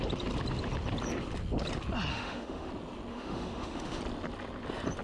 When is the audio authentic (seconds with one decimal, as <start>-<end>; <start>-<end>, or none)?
0.0-2.1; 2.7-3.1; 4.0-5.0